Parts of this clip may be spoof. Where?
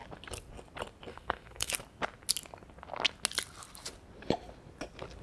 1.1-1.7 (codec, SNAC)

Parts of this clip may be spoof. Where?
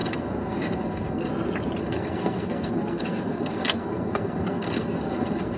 0.0-1.3 (codec, SNAC); 1.8-5.6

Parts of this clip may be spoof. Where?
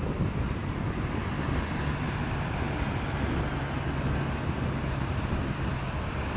none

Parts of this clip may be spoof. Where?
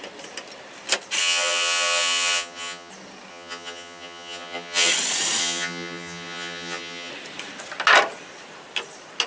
1.2-2.9 (vocoder, HiFi-GAN); 3.3-4.9; 5.4-7.1